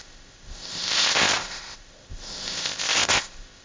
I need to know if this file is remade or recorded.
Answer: remade